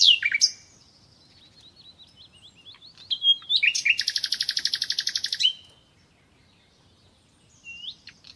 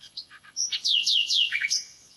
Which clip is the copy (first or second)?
second